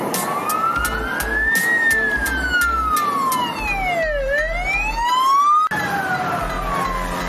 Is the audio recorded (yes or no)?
yes